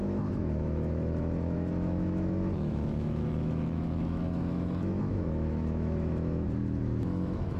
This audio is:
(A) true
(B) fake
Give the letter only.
B